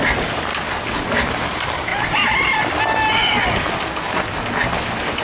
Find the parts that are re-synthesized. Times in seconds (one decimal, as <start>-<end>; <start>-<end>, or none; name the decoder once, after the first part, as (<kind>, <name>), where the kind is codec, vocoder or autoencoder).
none